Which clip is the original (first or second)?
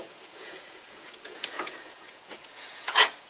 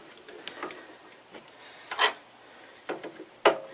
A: second